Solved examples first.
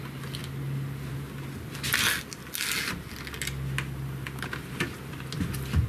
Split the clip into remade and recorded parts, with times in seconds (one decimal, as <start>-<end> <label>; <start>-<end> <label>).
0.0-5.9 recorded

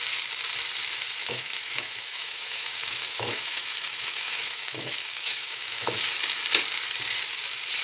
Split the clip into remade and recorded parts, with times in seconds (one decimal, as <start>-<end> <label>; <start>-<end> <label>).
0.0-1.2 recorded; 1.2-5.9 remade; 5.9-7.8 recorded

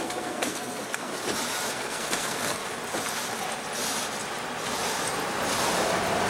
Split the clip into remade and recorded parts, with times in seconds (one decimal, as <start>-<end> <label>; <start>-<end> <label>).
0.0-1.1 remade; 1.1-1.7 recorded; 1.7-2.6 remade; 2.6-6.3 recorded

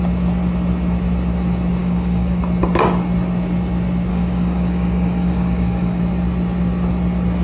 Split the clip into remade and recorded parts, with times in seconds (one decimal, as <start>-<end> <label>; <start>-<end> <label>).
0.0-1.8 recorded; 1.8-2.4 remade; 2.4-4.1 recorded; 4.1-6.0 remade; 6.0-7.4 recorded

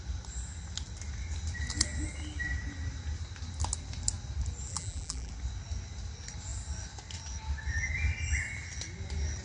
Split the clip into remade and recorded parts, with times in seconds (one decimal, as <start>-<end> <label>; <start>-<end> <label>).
0.0-4.7 recorded; 4.7-5.3 remade; 5.3-9.4 recorded

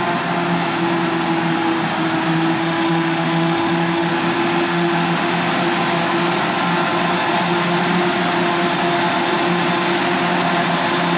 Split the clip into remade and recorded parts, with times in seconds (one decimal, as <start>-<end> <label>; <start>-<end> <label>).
0.0-2.6 recorded; 2.6-4.1 remade; 4.1-4.7 recorded; 4.7-5.3 remade; 5.3-11.2 recorded

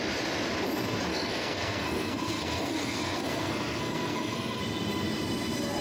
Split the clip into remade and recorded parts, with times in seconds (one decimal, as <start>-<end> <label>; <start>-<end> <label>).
0.0-1.1 recorded; 1.1-4.6 remade; 4.6-5.8 recorded

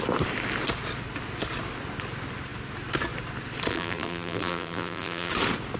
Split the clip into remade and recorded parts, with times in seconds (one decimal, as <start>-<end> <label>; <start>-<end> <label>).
0.0-3.7 recorded; 3.7-5.3 remade; 5.3-5.8 recorded